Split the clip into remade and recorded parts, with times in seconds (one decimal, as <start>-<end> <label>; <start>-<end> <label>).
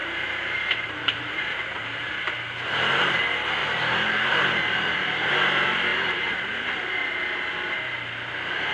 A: 0.0-3.2 remade; 3.2-3.6 recorded; 3.6-5.3 remade; 5.3-5.9 recorded; 5.9-6.5 remade; 6.5-8.7 recorded